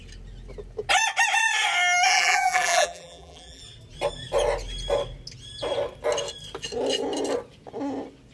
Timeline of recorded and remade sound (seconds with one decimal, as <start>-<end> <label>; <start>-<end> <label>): 0.0-2.1 recorded; 2.1-3.6 remade; 3.6-8.3 recorded